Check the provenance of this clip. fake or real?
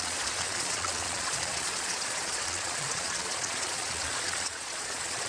fake